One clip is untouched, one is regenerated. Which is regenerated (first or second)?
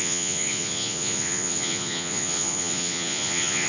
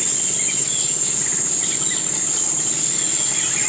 first